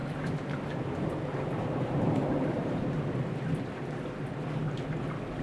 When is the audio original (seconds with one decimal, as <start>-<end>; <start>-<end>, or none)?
2.8-5.4

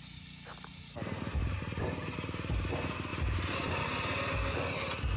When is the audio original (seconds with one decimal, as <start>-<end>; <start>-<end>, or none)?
0.0-1.0; 2.7-3.1; 3.8-5.2

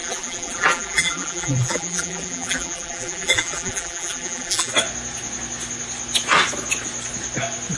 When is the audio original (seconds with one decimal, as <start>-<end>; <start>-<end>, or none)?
4.7-7.8

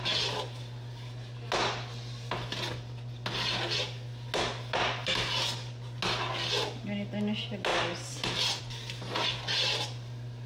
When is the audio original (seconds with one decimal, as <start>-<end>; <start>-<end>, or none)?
0.0-7.7; 8.6-10.5

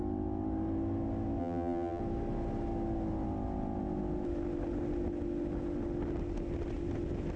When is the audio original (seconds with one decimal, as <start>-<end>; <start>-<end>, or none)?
0.0-1.4; 2.0-7.4